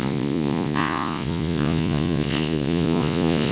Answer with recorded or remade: remade